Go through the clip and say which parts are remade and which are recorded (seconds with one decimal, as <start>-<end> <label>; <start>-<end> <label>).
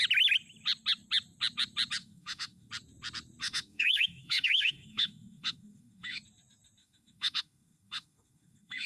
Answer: 0.0-2.0 recorded; 2.0-2.7 remade; 2.7-3.4 recorded; 3.4-6.2 remade; 6.2-6.8 recorded; 6.8-8.9 remade